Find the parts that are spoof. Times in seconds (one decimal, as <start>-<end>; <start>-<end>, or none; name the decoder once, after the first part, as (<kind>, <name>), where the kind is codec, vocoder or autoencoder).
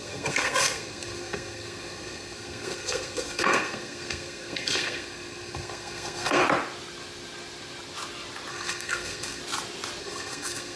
0.0-6.4 (codec, SNAC); 8.5-9.4; 10.0-10.8